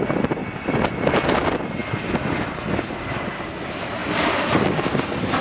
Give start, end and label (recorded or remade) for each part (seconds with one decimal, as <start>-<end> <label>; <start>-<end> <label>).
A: 0.0-5.4 recorded